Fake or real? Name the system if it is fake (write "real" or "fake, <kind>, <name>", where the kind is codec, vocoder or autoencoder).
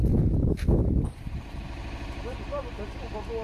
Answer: real